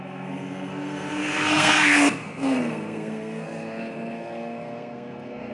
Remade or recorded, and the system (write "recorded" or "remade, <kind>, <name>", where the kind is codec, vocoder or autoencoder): remade, codec, SNAC